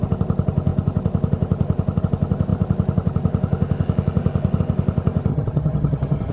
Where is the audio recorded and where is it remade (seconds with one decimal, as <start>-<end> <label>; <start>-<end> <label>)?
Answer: 0.0-5.3 recorded; 5.3-6.3 remade